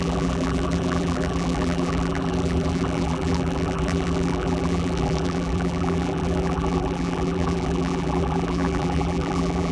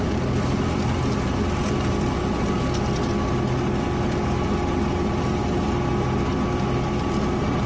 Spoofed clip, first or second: first